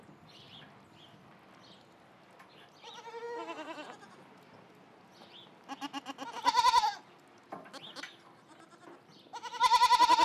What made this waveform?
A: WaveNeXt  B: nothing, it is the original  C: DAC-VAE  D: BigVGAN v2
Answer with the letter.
B